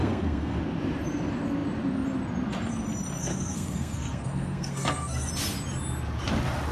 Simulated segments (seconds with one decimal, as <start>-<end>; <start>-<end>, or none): 0.0-0.6; 3.2-5.3